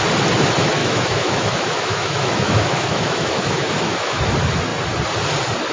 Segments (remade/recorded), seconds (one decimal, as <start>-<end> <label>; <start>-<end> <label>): 0.0-0.8 recorded; 0.8-4.2 remade; 4.2-5.7 recorded